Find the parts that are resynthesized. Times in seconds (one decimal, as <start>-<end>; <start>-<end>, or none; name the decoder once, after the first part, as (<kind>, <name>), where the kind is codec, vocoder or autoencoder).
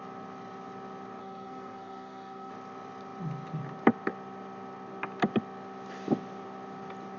1.2-2.5 (codec, SNAC)